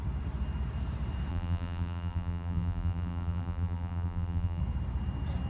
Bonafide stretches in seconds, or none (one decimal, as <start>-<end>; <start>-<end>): 0.0-1.3; 4.6-5.5

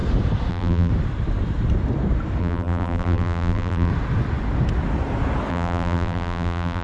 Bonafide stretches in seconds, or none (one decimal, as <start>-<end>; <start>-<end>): 0.0-0.5; 0.9-2.4; 3.9-5.5

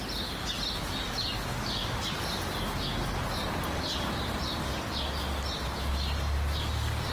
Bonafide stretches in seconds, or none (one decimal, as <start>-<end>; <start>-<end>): 0.0-7.1